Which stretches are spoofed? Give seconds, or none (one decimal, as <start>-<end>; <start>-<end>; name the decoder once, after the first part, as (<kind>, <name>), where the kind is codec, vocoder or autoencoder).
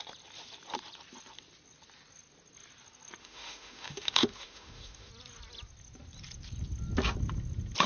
3.2-5.1 (autoencoder, DAC-VAE)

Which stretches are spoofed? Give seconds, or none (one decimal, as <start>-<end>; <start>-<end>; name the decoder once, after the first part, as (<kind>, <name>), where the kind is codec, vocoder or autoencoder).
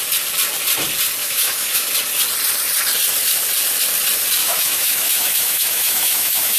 1.2-1.9 (autoencoder, DAC-VAE); 4.4-6.6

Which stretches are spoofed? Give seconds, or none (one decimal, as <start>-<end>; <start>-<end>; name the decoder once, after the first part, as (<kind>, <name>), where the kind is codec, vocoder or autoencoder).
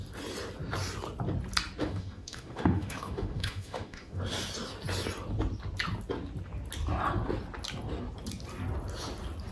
1.8-4.2 (autoencoder, DAC-VAE)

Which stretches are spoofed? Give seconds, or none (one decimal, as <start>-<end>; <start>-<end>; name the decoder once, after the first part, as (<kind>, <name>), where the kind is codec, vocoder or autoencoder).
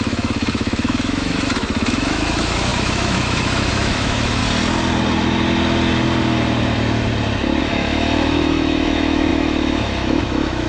0.0-4.4 (autoencoder, DAC-VAE); 7.6-10.7